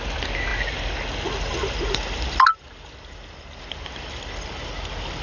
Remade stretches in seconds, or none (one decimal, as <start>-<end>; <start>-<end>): none